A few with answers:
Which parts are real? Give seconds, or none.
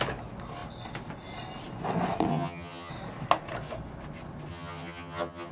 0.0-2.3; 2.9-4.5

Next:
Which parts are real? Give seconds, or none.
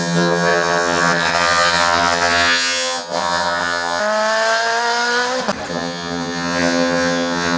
4.0-5.7